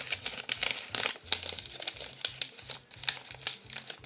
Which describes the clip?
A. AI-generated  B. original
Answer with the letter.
B